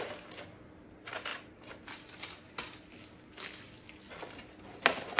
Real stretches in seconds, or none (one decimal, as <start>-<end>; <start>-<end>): 0.0-5.2